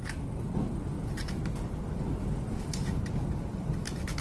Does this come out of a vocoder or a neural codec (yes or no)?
no